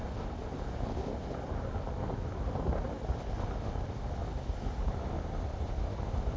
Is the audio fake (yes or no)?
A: no